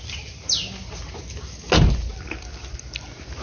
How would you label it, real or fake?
real